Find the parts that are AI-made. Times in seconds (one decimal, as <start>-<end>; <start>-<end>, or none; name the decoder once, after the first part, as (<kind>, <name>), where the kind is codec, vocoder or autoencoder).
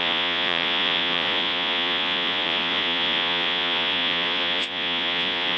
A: 0.0-5.6 (vocoder, Vocos)